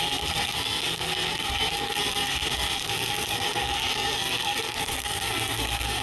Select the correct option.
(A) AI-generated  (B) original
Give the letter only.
A